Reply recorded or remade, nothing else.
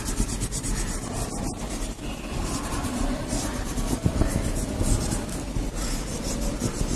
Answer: recorded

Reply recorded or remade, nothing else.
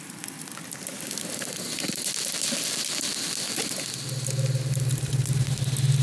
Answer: recorded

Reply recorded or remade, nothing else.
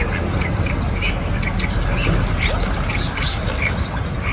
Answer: recorded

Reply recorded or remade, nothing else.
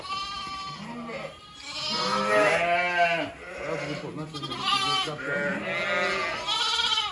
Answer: recorded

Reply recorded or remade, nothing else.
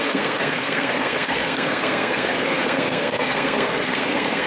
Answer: remade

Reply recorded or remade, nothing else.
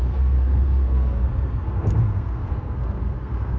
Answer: remade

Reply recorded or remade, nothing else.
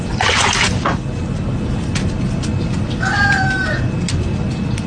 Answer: recorded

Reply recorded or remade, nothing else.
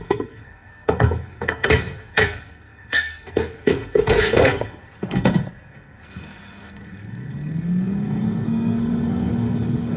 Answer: remade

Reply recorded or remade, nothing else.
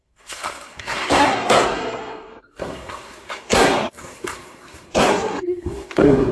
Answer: remade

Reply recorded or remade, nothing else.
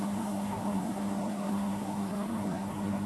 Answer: remade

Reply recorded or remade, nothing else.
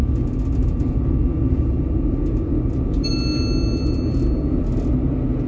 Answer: recorded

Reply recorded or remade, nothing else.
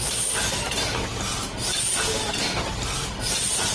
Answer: recorded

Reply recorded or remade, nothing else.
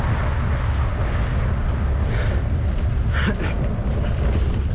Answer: recorded